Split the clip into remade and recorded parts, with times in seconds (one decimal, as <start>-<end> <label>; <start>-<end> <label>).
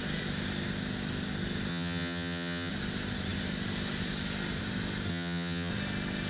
0.0-1.7 recorded; 1.7-2.7 remade; 2.7-5.1 recorded; 5.1-5.7 remade; 5.7-6.3 recorded